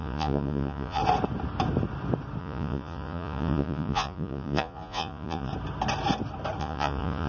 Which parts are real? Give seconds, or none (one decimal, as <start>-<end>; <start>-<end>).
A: 1.0-2.4; 5.5-6.6